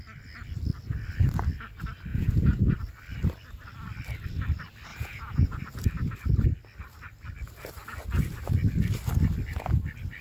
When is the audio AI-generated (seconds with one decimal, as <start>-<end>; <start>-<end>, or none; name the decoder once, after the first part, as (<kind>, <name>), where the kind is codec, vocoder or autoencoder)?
2.1-2.7 (vocoder, Vocos); 4.9-5.6